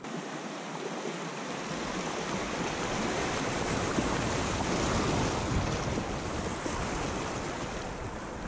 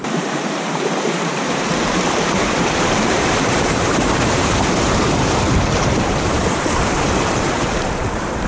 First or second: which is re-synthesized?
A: second